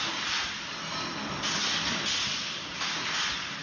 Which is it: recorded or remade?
recorded